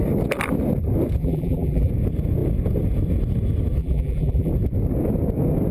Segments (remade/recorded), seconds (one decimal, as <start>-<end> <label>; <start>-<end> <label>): 0.0-1.2 recorded; 1.2-1.9 remade; 1.9-3.8 recorded; 3.8-4.5 remade; 4.5-5.7 recorded